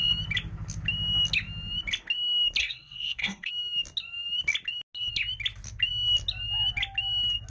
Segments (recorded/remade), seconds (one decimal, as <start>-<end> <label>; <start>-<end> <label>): 0.0-2.6 recorded; 2.6-3.5 remade; 3.5-7.5 recorded